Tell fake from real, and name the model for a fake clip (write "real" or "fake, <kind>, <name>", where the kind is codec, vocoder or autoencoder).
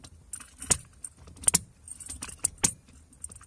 real